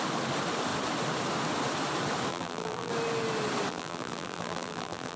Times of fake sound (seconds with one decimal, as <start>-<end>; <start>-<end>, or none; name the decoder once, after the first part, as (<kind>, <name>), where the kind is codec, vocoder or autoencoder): 2.3-2.9 (vocoder, BigVGAN v2); 3.7-5.2

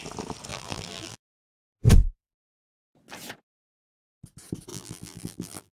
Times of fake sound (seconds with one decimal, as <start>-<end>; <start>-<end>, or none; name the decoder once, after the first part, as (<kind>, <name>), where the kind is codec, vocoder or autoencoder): 0.5-1.2 (vocoder, BigVGAN v2); 4.7-5.7